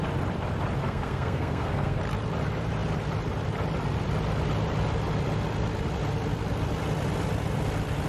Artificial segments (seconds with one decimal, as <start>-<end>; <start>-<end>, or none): 0.8-2.0